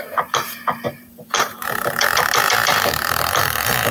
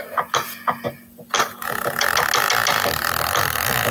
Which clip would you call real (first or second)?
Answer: second